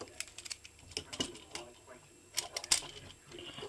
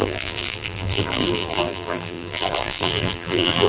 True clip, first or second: first